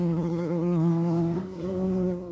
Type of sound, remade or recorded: remade